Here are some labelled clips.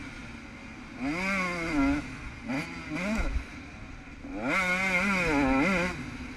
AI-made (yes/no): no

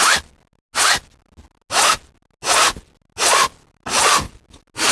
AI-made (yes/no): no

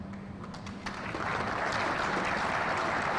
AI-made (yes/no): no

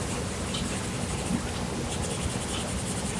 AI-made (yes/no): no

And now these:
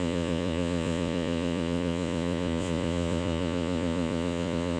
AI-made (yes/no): yes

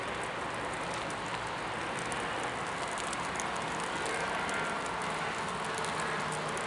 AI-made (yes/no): no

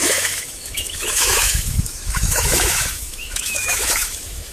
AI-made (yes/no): yes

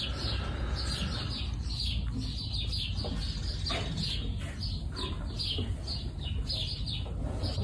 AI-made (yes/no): no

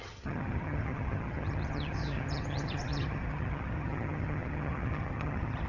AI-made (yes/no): yes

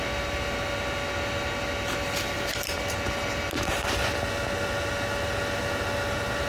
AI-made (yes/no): no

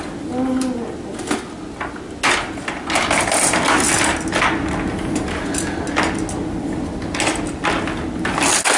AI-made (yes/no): no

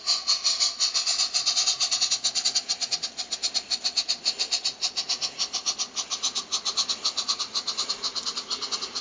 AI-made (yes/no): no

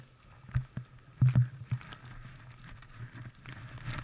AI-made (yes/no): no